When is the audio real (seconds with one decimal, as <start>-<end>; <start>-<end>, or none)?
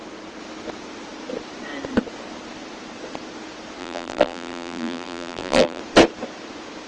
0.0-3.8; 5.8-6.9